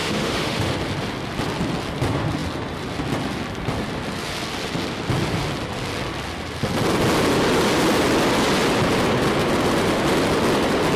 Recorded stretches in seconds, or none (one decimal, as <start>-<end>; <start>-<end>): 0.7-11.0